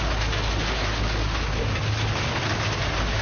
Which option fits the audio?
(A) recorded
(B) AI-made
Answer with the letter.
A